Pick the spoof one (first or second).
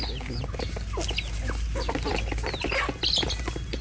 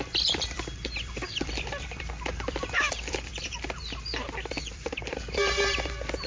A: second